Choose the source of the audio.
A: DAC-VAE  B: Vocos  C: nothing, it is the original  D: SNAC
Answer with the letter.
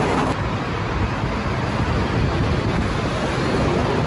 C